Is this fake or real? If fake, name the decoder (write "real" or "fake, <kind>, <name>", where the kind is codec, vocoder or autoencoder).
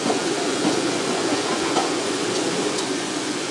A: fake, vocoder, Vocos